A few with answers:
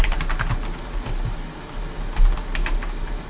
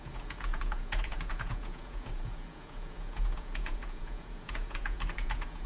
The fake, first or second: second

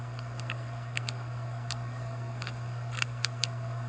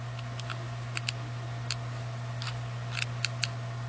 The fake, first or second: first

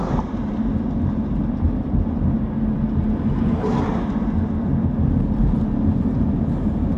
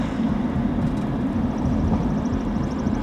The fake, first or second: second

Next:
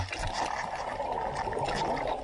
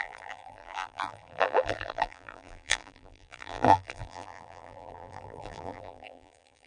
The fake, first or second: second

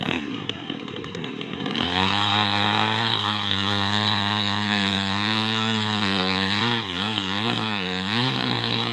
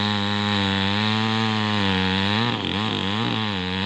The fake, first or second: first